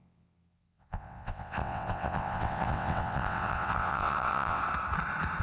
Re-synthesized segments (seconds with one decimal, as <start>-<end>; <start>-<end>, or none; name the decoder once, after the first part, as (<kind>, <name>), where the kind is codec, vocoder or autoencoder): 0.0-4.6 (vocoder, WaveNeXt)